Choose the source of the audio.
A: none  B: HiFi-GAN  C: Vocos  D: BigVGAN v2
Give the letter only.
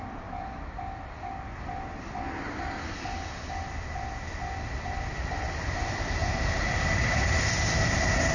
A